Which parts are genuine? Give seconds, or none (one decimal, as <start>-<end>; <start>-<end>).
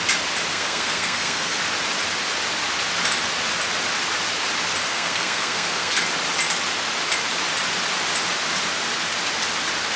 0.0-0.5; 1.6-4.9; 6.0-10.0